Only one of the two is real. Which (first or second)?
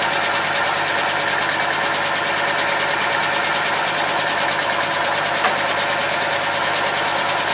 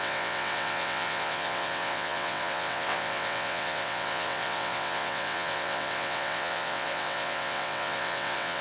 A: first